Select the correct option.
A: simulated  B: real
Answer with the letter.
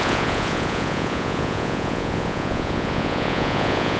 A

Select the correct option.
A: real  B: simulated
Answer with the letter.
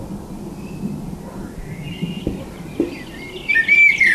A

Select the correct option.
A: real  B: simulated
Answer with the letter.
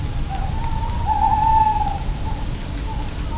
A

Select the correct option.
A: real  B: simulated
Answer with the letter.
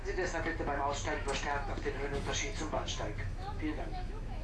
B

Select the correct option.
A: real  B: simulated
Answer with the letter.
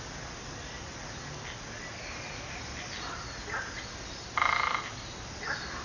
A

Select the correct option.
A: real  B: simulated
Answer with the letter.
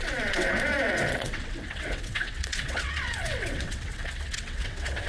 B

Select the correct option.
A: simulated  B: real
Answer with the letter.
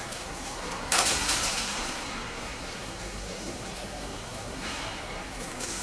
A